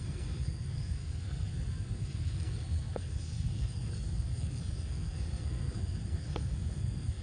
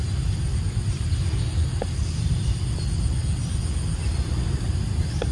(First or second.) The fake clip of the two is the first